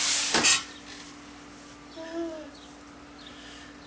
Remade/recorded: recorded